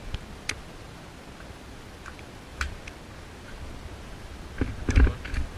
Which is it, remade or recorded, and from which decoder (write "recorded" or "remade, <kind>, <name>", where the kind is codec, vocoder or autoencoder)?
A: recorded